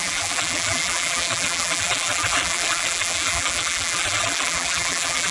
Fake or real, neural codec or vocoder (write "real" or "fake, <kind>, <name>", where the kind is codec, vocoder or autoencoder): fake, vocoder, BigVGAN v2